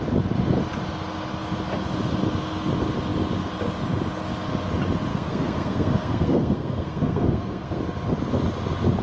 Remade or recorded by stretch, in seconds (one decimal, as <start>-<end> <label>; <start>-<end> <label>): 0.0-5.1 recorded; 5.1-7.8 remade; 7.8-9.0 recorded